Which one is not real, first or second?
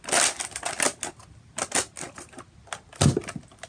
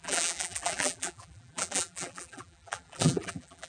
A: second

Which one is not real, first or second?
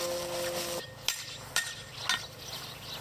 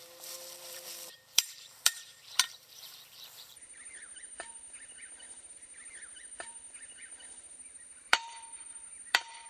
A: second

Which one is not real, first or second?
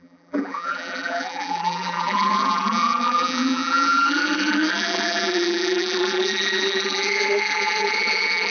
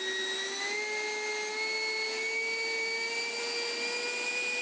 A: first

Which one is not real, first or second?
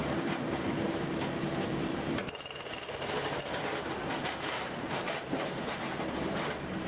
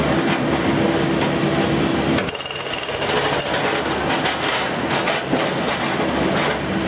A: first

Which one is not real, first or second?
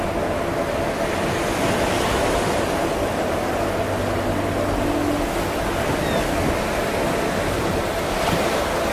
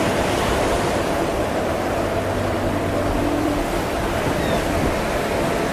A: second